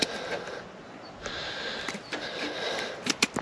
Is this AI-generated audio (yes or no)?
no